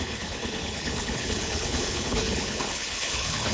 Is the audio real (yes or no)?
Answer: no